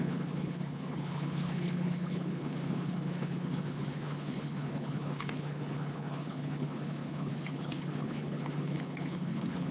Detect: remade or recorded remade